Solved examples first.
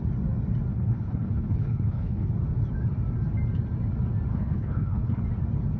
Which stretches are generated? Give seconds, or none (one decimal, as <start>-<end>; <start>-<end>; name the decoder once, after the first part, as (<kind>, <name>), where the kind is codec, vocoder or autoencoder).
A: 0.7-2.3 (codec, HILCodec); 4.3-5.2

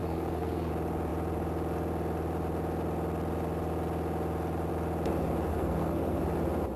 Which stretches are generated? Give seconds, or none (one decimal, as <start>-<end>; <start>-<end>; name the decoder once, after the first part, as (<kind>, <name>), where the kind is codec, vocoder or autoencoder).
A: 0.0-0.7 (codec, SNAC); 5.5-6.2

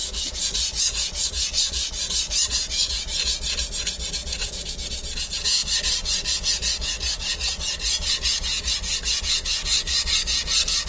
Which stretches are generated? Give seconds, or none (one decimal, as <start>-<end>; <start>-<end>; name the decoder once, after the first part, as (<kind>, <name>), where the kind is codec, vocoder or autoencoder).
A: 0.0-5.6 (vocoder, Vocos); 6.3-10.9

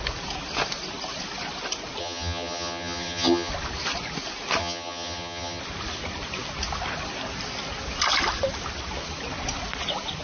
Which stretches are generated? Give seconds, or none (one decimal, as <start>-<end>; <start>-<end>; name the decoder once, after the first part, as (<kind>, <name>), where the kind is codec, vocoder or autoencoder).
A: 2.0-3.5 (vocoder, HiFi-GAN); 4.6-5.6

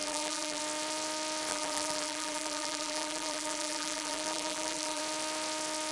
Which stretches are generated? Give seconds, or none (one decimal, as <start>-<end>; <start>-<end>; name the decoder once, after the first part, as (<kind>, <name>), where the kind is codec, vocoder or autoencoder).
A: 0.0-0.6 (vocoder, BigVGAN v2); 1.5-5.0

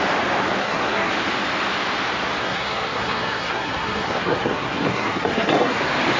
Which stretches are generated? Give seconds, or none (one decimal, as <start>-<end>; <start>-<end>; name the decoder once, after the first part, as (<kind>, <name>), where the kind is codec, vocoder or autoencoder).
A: 0.6-1.1 (codec, SNAC); 2.4-5.8